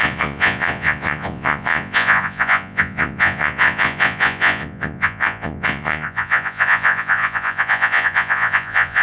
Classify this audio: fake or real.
fake